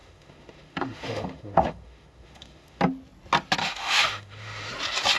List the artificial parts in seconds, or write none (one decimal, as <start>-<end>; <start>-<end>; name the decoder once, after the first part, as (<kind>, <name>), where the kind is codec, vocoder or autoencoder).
0.0-2.8 (autoencoder, DAC-VAE); 3.6-4.7

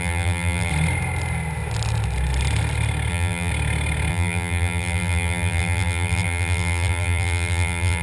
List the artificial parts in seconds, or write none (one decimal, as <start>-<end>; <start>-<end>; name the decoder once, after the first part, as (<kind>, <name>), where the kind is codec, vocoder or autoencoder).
0.0-0.7 (vocoder, BigVGAN v2); 3.1-3.5; 4.1-8.0

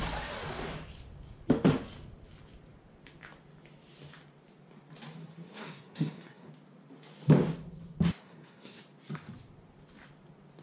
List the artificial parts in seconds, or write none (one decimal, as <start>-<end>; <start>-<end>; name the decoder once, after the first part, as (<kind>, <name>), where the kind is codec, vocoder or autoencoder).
5.2-6.5 (codec, SNAC); 8.2-8.8

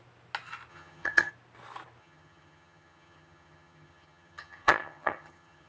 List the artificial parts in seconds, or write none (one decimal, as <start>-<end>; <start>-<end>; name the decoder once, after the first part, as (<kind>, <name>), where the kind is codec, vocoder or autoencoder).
0.7-1.3 (vocoder, HiFi-GAN); 2.0-5.7

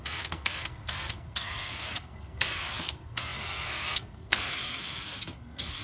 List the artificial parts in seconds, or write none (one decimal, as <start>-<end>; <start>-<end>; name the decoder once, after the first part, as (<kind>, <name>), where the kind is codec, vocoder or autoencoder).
0.0-5.8 (codec, SNAC)

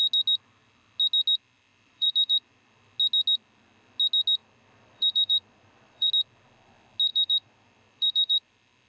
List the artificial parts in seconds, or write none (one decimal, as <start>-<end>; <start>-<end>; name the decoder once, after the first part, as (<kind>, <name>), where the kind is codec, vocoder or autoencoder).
1.7-2.7 (vocoder, BigVGAN v2); 4.4-6.1; 7.1-8.5

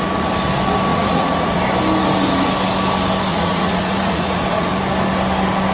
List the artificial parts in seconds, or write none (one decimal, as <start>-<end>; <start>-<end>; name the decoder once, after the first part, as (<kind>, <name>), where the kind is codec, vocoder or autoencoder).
0.9-1.6 (vocoder, Vocos); 3.3-4.7

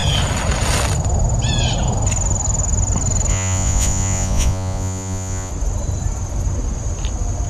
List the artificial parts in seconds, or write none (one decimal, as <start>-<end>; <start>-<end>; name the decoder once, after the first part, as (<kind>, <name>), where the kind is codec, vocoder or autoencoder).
3.3-5.5 (vocoder, Vocos)